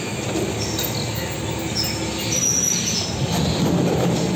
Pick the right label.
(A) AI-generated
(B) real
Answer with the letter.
B